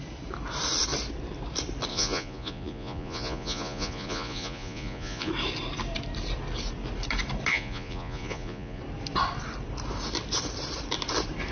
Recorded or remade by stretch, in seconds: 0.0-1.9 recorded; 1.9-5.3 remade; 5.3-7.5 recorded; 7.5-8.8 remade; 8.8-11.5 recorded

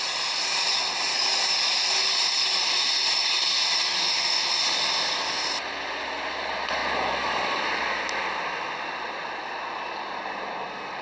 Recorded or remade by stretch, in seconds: 0.0-11.0 recorded